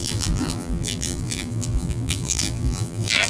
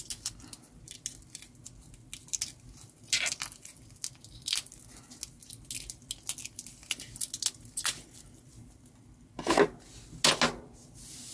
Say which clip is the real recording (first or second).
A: second